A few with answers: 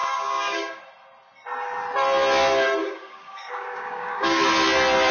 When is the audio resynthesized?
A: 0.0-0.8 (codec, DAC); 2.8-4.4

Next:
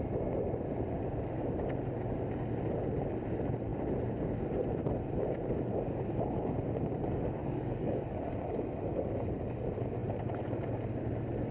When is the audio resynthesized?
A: 7.4-8.2 (codec, DAC)

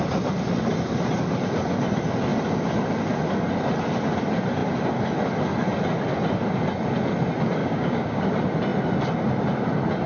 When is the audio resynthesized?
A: 7.6-8.2 (codec, DAC)